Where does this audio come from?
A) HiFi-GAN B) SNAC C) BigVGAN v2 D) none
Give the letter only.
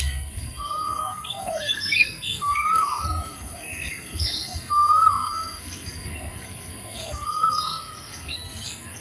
B